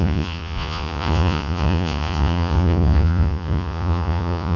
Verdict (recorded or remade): remade